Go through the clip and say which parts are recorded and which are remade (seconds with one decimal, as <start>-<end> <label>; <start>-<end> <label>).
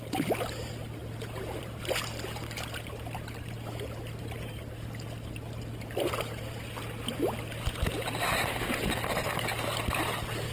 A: 0.0-10.5 recorded